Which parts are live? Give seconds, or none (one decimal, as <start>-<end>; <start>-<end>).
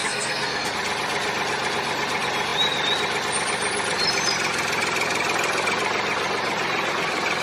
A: 0.7-7.4